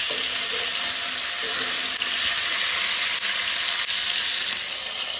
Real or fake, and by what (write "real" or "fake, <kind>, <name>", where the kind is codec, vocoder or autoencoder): real